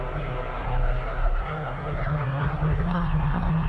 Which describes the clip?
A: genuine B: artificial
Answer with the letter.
B